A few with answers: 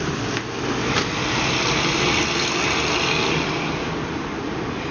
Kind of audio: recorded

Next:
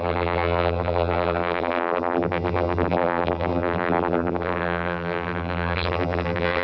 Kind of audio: remade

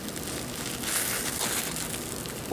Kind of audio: recorded